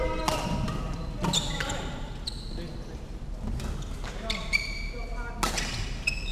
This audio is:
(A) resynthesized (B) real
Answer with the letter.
B